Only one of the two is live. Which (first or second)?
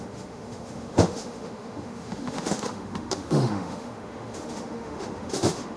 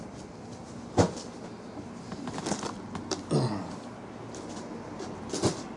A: second